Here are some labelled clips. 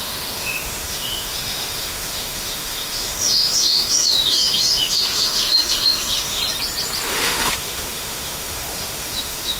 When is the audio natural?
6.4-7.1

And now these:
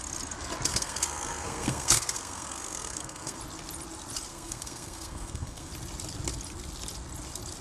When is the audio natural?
0.0-0.7; 3.4-4.3; 5.7-7.6

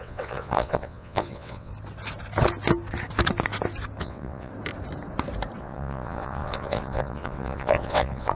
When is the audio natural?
1.7-4.0; 4.5-5.6

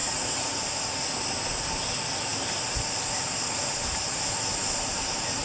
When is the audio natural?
0.6-5.4

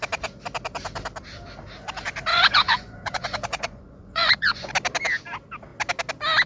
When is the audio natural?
0.0-2.3; 4.7-6.5